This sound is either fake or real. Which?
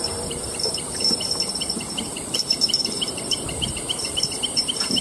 fake